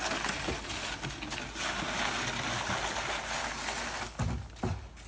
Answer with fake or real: real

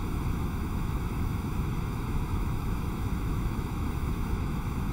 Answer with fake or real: fake